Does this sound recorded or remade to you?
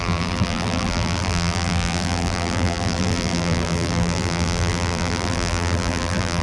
remade